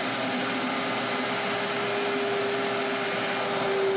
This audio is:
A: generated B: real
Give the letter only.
B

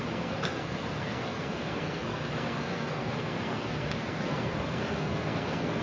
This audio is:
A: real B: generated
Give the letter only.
B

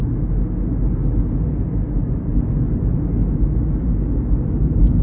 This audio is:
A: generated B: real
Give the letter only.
B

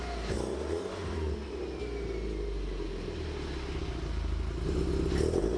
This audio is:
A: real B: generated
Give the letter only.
A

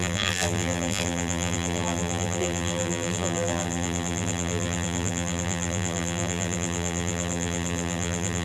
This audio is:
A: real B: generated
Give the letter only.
B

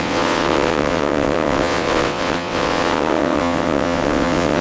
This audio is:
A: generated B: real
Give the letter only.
A